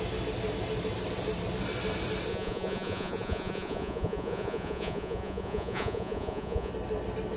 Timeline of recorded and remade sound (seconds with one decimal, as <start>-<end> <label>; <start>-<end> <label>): 0.0-2.3 recorded; 2.3-6.7 remade; 6.7-7.4 recorded